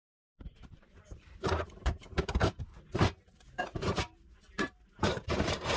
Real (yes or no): no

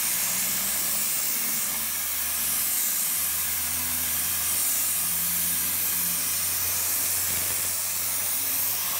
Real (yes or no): yes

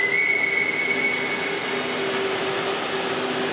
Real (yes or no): yes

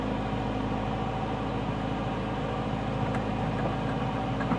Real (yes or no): yes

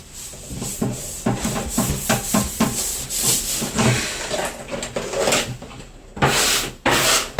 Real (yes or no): no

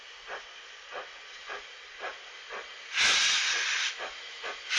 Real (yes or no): yes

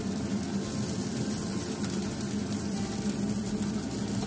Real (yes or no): yes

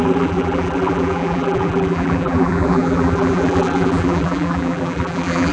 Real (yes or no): no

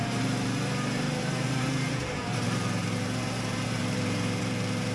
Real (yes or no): no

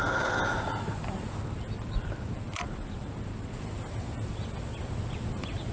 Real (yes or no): yes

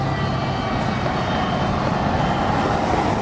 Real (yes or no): yes